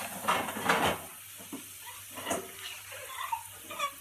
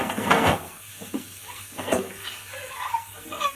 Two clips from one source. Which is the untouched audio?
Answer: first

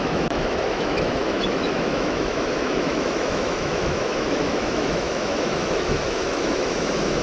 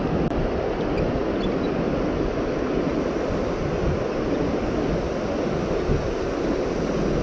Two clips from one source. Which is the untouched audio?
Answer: second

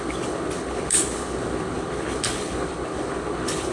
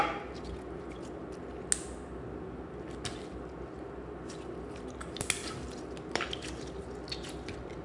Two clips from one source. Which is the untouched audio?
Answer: second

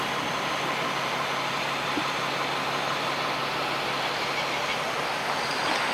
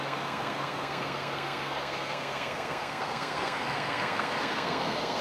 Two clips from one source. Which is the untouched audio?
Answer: first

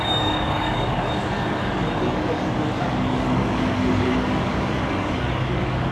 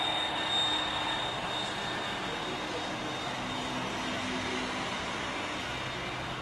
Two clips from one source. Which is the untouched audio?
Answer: second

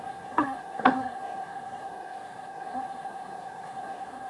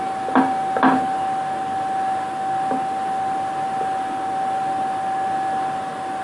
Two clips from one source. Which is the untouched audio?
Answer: second